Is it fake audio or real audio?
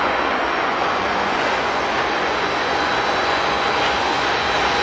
fake